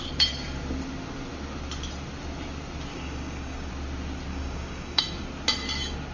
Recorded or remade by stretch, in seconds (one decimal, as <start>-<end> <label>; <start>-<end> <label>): 0.0-2.9 recorded; 2.9-3.7 remade; 3.7-4.3 recorded; 4.3-5.0 remade; 5.0-6.1 recorded